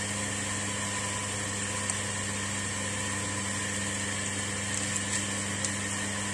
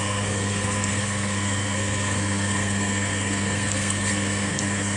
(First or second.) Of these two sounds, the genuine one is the first